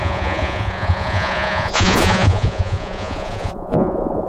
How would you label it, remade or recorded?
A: remade